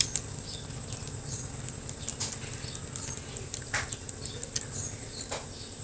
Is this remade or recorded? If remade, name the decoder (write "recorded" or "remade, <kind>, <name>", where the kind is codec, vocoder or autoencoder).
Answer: recorded